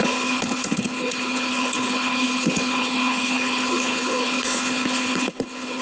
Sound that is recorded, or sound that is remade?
remade